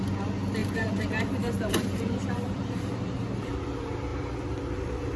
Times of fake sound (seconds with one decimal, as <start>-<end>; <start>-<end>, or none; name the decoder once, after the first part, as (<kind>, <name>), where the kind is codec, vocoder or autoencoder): 0.6-3.5 (vocoder, BigVGAN v2)